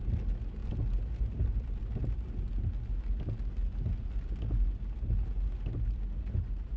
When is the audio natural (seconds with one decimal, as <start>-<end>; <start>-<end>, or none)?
0.0-6.8